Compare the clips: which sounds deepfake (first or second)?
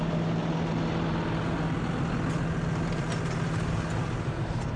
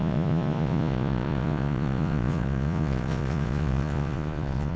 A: second